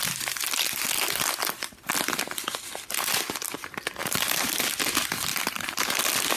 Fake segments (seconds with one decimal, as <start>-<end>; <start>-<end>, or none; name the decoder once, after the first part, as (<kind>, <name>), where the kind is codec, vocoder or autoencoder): 4.0-4.6 (vocoder, BigVGAN v2); 5.3-6.0